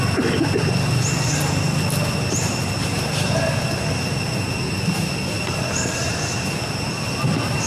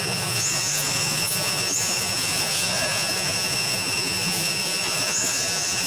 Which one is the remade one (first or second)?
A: second